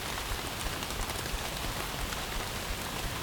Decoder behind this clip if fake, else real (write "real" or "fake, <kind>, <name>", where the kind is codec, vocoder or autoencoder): real